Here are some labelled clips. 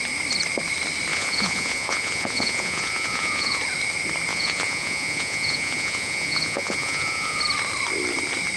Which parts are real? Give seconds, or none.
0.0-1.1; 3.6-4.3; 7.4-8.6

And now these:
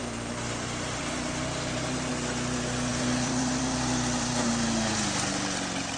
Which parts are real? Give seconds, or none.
2.1-2.9; 5.3-6.0